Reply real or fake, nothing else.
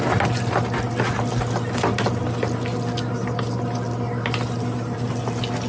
real